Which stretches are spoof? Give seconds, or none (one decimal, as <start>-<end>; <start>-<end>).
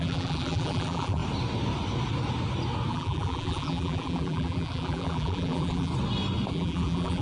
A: 0.0-1.2; 2.9-5.9; 6.5-7.2